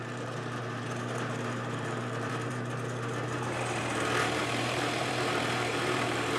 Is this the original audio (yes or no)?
no